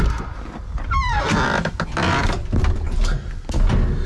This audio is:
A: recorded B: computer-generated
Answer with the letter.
A